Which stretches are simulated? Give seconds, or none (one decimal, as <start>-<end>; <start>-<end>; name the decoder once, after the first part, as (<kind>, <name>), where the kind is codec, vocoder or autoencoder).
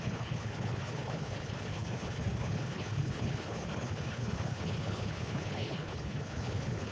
0.0-6.9 (codec, HILCodec)